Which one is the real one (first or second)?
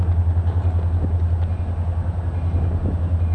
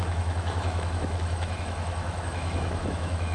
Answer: first